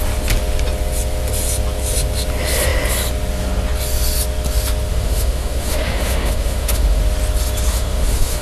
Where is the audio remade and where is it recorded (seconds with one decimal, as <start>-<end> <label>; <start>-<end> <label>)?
0.0-4.9 recorded; 4.9-7.0 remade; 7.0-7.7 recorded; 7.7-8.4 remade